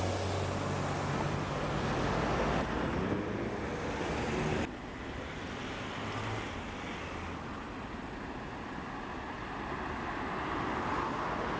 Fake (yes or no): no